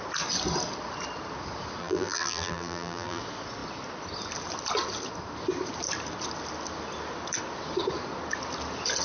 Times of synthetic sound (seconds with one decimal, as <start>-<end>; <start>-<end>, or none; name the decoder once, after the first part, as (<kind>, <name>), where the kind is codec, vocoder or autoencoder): 1.8-3.2 (vocoder, BigVGAN v2)